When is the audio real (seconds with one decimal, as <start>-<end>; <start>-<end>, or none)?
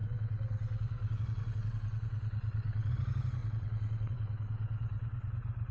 2.9-3.4; 5.3-5.7